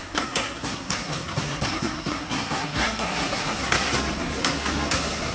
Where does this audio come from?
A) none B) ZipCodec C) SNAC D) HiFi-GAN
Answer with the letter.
C